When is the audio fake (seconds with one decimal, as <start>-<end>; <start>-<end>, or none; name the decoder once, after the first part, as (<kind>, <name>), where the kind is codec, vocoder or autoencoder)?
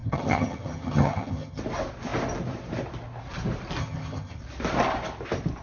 0.0-1.6 (vocoder, HiFi-GAN); 3.8-4.4